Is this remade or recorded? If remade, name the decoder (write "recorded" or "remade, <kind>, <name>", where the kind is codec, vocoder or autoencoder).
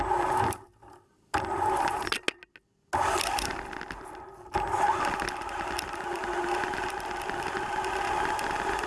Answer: recorded